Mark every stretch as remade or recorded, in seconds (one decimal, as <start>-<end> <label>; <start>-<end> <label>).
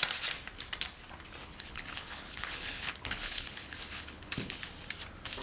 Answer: 0.0-1.4 recorded; 1.4-4.6 remade; 4.6-5.4 recorded